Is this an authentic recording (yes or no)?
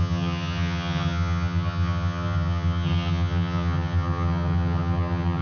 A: no